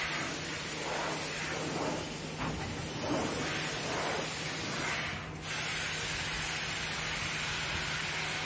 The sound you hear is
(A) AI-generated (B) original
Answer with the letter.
B